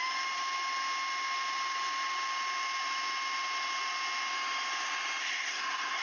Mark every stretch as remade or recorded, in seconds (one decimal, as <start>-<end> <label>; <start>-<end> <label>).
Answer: 0.0-5.2 recorded; 5.2-6.0 remade